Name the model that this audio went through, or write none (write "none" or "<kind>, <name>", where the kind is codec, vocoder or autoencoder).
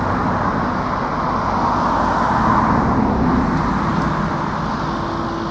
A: none